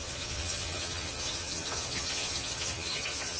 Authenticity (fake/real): fake